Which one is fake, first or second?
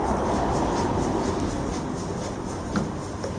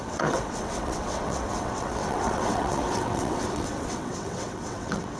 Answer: second